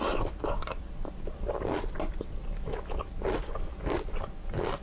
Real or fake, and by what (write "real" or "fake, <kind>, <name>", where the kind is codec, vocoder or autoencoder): real